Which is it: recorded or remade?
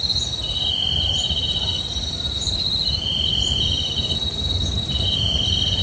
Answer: remade